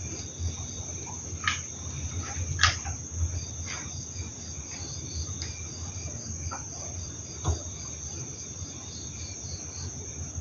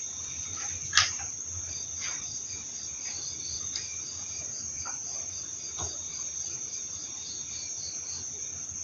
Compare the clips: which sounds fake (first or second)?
second